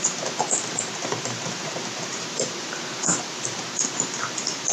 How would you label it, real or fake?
fake